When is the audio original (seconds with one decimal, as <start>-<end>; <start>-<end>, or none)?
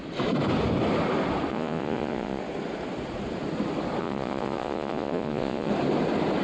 0.0-1.5; 2.4-4.0; 5.7-6.4